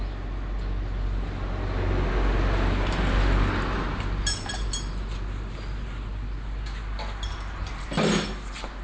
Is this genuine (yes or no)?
yes